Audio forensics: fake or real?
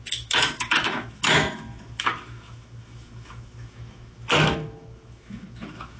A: fake